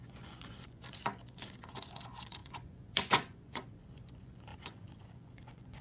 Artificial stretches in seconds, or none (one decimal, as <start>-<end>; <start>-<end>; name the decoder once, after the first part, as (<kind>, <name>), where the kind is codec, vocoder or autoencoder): 0.0-5.8 (vocoder, Vocos)